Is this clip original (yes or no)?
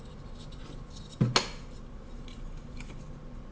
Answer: yes